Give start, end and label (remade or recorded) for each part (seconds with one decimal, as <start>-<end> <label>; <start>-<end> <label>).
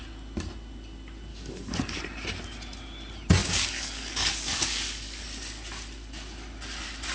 0.0-1.3 recorded; 1.3-2.0 remade; 2.0-3.4 recorded; 3.4-5.2 remade; 5.2-7.1 recorded